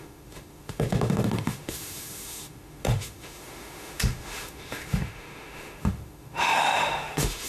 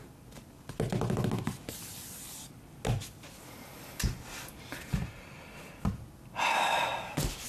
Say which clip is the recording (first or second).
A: second